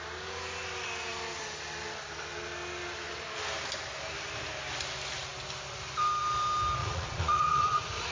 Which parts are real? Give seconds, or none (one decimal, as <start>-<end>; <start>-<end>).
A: 0.0-6.8